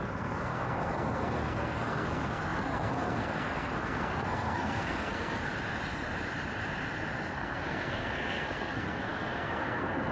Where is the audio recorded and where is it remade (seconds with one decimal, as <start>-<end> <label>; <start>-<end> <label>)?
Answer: 0.0-5.5 remade; 5.5-7.3 recorded; 7.3-10.1 remade